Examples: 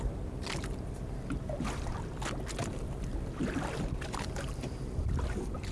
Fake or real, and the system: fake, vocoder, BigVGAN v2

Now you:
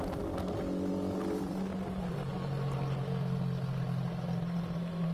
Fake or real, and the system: real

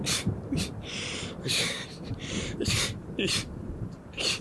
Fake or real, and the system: fake, vocoder, BigVGAN v2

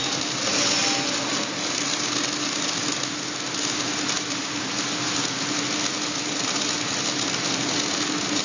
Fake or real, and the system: real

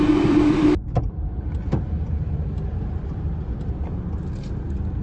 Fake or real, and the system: fake, vocoder, BigVGAN v2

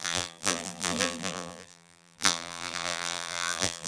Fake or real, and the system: fake, vocoder, BigVGAN v2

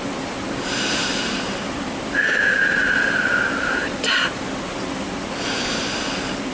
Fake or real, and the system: fake, vocoder, BigVGAN v2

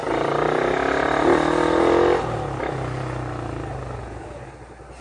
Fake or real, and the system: real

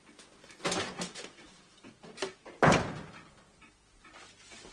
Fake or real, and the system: real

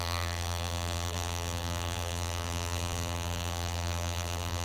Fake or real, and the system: fake, vocoder, BigVGAN v2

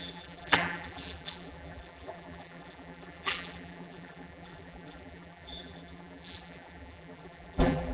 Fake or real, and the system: fake, vocoder, BigVGAN v2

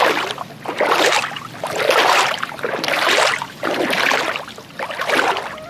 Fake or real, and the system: fake, vocoder, BigVGAN v2